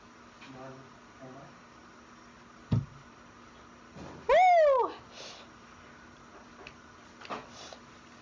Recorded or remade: recorded